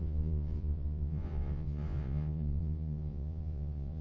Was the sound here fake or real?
fake